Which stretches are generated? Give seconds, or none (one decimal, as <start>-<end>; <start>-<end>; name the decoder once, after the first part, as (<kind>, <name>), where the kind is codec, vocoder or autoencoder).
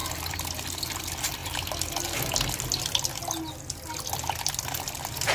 0.0-0.6 (vocoder, BigVGAN v2)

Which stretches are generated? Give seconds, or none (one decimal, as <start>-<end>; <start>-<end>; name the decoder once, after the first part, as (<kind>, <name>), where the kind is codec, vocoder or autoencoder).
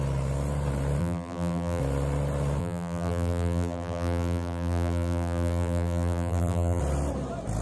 1.0-1.8 (vocoder, BigVGAN v2); 2.6-6.8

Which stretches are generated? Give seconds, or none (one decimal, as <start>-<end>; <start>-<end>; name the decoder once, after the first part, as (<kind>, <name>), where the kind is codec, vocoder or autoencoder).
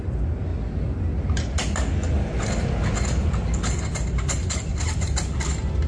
4.7-5.2 (vocoder, BigVGAN v2)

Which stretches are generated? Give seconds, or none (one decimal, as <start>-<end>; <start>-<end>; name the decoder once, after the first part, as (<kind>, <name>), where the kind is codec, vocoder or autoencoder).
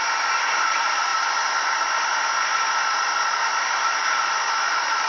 0.0-5.1 (vocoder, BigVGAN v2)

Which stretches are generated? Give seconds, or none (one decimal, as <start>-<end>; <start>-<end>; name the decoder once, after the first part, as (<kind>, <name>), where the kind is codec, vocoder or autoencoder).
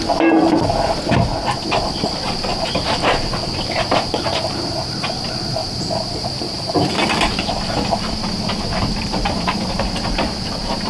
2.5-4.8 (vocoder, BigVGAN v2); 5.6-7.5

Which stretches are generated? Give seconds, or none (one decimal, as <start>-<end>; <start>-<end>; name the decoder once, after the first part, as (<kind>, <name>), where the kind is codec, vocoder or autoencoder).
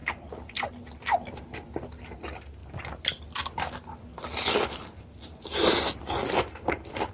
0.0-0.7 (vocoder, BigVGAN v2); 6.2-7.1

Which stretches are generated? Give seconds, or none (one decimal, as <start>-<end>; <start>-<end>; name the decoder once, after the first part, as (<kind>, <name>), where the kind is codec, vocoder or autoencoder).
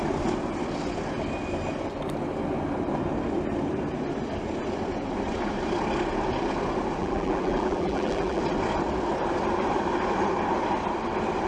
7.0-8.4 (vocoder, BigVGAN v2)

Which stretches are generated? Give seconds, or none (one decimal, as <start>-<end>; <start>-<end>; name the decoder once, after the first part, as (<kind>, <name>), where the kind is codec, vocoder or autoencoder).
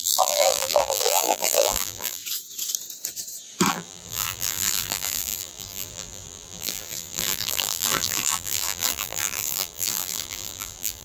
0.0-2.2 (vocoder, BigVGAN v2); 3.7-11.0